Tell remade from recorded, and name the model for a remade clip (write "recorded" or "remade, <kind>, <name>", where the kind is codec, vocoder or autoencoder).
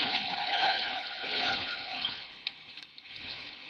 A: remade, codec, HILCodec